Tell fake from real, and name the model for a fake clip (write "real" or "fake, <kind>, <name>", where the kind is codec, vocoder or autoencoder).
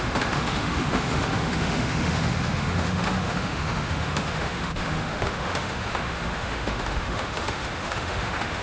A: fake, autoencoder, DAC-VAE